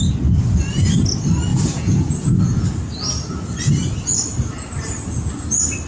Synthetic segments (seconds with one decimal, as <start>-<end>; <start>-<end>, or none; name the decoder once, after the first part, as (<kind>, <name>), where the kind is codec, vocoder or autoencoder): 1.5-2.4 (vocoder, Vocos)